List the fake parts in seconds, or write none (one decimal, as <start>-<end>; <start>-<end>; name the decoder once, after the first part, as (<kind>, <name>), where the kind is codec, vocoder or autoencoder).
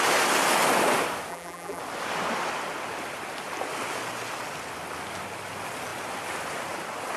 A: 1.3-1.8 (vocoder, BigVGAN v2)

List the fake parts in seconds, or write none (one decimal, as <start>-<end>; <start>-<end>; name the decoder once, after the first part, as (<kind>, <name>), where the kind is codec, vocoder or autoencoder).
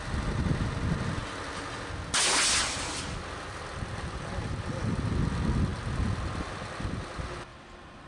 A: none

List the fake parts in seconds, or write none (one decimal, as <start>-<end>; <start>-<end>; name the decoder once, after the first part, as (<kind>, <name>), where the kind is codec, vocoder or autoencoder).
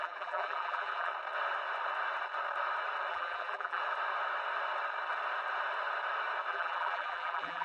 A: 0.0-1.1 (vocoder, BigVGAN v2); 3.1-3.8; 6.5-7.6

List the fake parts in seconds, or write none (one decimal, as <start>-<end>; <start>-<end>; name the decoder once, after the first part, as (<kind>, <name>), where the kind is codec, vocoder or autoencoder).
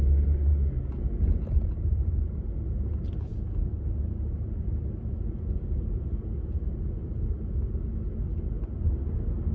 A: none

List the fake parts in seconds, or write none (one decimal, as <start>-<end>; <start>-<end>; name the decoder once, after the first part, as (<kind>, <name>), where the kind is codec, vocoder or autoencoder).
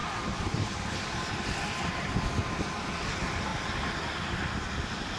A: 0.0-3.1 (vocoder, BigVGAN v2); 3.5-5.2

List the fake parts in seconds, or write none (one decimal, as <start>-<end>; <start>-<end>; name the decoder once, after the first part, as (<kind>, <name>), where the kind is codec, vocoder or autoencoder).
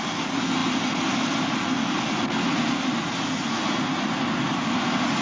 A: 0.6-3.0 (vocoder, BigVGAN v2)